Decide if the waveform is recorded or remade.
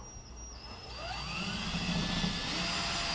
recorded